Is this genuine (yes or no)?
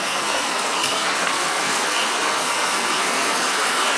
no